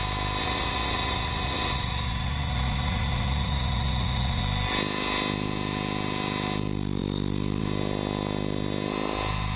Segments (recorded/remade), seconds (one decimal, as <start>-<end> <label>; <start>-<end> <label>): 0.0-0.4 recorded; 0.4-4.4 remade; 4.4-9.6 recorded